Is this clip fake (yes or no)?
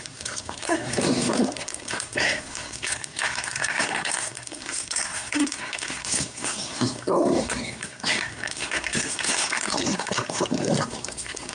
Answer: yes